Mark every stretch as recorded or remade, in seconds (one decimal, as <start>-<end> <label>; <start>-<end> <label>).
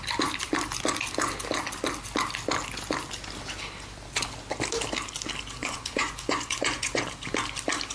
0.0-5.6 recorded; 5.6-7.0 remade; 7.0-7.9 recorded